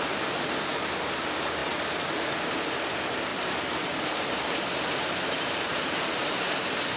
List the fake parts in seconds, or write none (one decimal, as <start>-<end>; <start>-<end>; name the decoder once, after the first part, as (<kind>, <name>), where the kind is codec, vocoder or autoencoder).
3.3-7.0 (vocoder, BigVGAN v2)